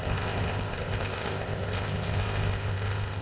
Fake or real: fake